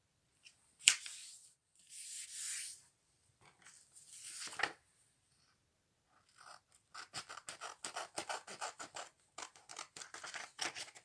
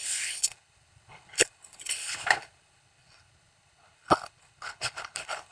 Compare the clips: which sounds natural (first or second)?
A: first